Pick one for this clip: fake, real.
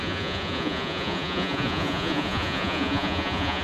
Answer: fake